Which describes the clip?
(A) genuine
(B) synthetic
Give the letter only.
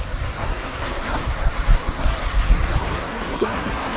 B